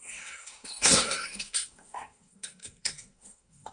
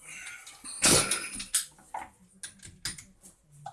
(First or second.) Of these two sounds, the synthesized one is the first